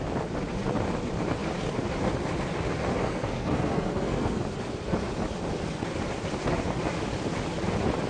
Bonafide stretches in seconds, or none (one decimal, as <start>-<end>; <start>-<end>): 0.0-2.9; 4.4-8.1